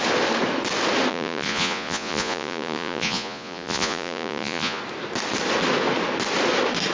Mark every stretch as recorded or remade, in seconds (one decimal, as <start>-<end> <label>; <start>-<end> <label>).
0.0-1.1 recorded; 1.1-4.8 remade; 4.8-6.9 recorded